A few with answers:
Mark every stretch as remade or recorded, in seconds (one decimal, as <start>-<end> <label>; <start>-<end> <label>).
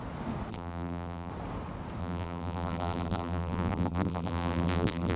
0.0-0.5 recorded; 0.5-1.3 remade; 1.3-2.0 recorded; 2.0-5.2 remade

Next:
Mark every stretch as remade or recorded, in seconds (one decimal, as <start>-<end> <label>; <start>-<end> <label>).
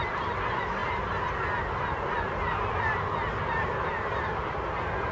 0.0-5.1 recorded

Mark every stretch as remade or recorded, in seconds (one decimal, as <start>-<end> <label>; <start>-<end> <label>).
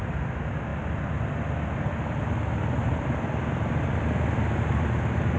0.0-0.7 recorded; 0.7-3.3 remade; 3.3-5.4 recorded